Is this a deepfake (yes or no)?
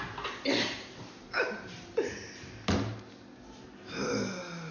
no